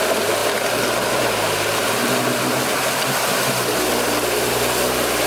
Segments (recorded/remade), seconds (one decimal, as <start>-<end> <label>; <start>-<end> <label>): 0.0-0.4 recorded; 0.4-2.1 remade; 2.1-3.3 recorded; 3.3-4.5 remade; 4.5-5.3 recorded